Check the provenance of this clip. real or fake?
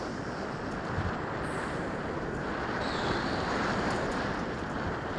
real